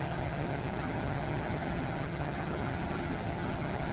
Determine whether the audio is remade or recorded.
remade